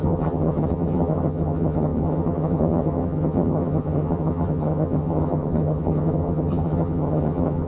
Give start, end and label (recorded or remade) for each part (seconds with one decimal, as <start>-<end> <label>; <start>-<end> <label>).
0.0-7.7 remade